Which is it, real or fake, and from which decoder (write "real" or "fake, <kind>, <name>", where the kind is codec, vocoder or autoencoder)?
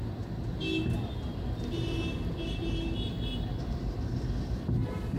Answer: real